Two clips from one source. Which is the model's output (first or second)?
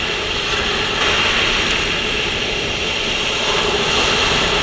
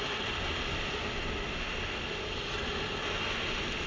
first